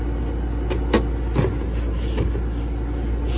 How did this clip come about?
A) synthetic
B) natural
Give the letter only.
B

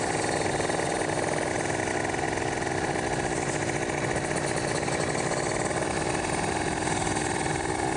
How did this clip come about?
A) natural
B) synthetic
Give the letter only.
A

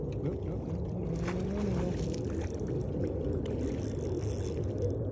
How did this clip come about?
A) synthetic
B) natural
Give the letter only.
B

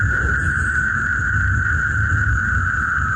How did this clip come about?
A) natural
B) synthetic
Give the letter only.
A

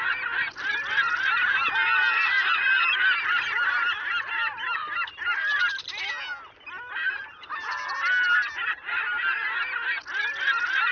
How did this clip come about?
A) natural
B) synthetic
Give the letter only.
A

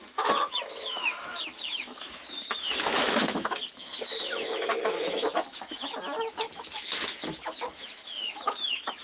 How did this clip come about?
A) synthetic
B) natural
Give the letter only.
A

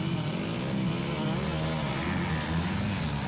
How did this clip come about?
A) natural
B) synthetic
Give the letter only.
A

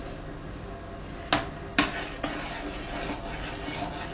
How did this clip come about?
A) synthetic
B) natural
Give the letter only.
B